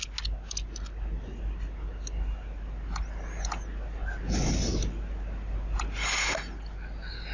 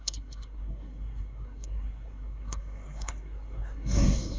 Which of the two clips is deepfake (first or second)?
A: second